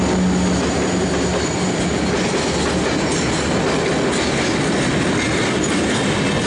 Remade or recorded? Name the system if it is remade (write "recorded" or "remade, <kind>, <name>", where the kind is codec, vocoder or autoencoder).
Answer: recorded